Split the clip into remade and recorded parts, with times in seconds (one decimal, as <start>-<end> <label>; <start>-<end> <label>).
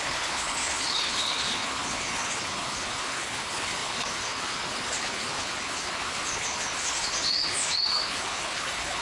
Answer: 0.0-9.0 remade